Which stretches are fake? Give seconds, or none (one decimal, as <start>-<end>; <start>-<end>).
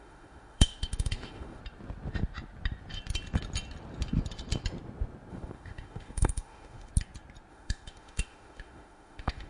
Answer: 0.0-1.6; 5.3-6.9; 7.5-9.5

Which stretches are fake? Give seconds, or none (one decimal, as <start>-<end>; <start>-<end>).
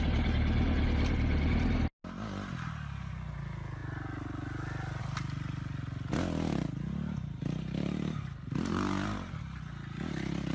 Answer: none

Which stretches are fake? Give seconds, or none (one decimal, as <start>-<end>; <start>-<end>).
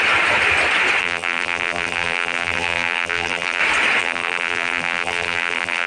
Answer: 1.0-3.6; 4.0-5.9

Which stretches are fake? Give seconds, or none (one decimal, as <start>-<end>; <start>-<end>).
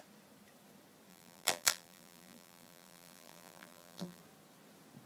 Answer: 1.1-4.2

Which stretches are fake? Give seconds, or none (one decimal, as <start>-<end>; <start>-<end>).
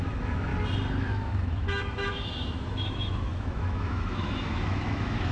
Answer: 0.0-0.5; 1.0-5.3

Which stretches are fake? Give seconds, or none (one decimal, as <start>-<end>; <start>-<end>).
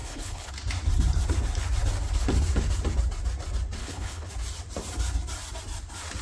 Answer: 0.0-0.5; 3.8-4.3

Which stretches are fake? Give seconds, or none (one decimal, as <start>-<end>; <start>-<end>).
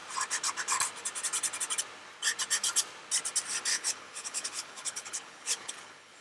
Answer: 3.7-6.2